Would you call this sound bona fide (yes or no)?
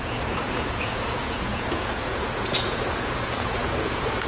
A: no